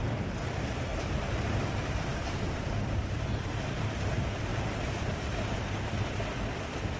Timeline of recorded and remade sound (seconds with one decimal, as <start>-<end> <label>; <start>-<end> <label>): 0.0-0.9 recorded; 0.9-4.1 remade; 4.1-4.5 recorded; 4.5-5.4 remade; 5.4-7.0 recorded